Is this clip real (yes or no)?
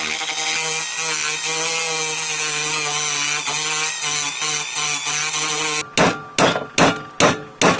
yes